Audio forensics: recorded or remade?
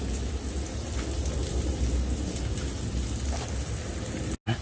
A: recorded